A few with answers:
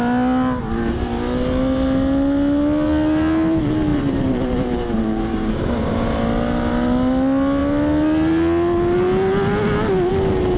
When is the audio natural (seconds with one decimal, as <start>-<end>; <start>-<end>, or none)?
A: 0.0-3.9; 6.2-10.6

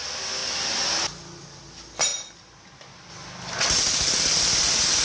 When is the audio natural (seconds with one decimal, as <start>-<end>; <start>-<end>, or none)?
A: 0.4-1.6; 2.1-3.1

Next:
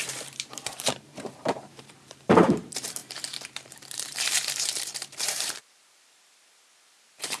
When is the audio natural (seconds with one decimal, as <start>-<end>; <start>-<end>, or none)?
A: none